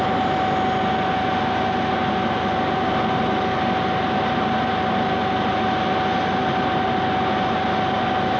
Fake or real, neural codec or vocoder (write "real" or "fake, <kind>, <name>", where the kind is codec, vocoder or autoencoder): real